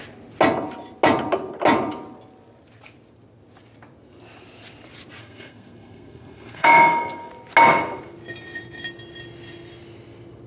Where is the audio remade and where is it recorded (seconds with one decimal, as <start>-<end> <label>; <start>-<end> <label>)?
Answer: 0.0-5.2 recorded; 5.2-7.3 remade; 7.3-10.5 recorded